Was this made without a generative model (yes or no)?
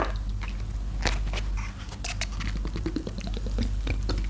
yes